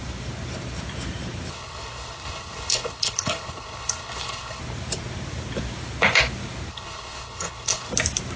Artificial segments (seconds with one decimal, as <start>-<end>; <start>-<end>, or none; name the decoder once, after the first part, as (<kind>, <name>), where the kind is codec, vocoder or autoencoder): 1.5-4.6 (codec, HILCodec); 6.7-7.9